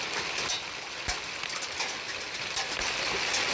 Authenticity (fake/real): real